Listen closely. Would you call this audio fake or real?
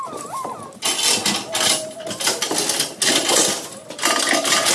real